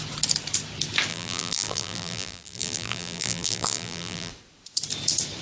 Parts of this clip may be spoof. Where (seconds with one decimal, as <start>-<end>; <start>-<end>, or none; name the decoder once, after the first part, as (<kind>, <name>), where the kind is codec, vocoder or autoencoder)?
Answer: 1.1-4.3 (vocoder, BigVGAN v2)